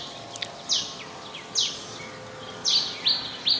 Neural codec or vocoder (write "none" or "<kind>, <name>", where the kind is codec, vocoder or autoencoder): none